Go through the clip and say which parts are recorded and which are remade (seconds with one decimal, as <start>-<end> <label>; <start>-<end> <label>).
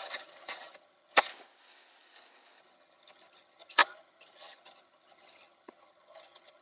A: 0.0-1.3 remade; 1.3-2.6 recorded; 2.6-6.6 remade